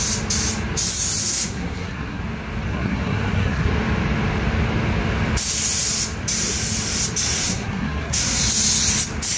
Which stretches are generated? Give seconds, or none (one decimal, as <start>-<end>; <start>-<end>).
1.2-2.2; 2.7-3.7; 7.4-8.4